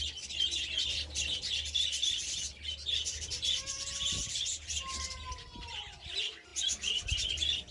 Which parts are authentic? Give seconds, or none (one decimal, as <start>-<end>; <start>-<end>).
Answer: 0.0-7.7